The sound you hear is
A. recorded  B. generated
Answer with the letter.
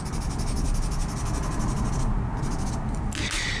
A